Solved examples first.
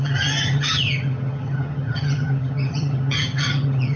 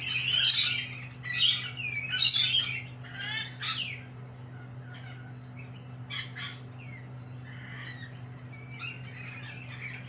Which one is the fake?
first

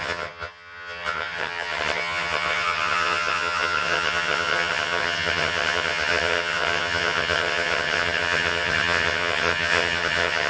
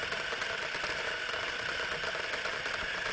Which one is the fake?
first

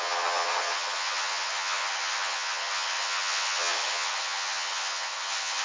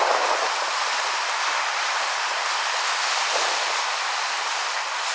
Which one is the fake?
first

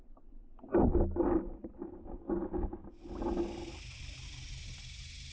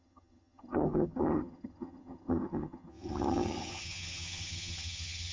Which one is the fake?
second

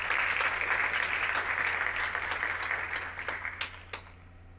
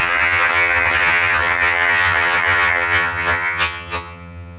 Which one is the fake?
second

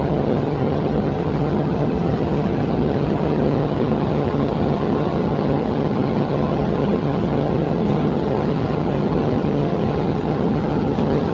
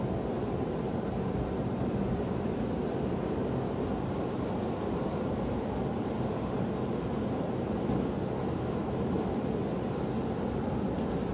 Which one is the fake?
first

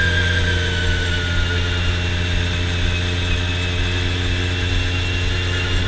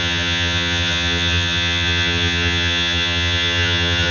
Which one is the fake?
second